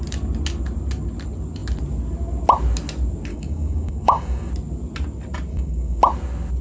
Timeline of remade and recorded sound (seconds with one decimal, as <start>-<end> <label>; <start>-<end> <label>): 0.0-3.3 recorded; 3.3-4.5 remade; 4.5-5.5 recorded; 5.5-6.0 remade; 6.0-6.6 recorded